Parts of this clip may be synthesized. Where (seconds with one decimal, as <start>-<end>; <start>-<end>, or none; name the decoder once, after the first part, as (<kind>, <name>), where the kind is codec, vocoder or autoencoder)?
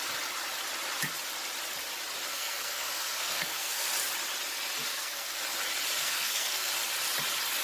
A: 2.3-3.9 (codec, SNAC); 4.9-5.4; 6.0-6.7